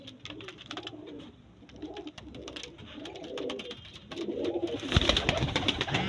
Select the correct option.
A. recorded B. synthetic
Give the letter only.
A